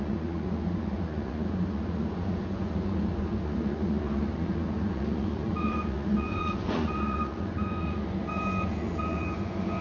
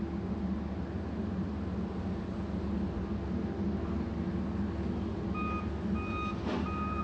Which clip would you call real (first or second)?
second